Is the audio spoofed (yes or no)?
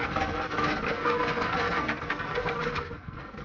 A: yes